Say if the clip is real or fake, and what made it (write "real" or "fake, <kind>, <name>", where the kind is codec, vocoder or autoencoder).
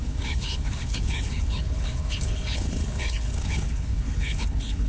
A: fake, codec, HILCodec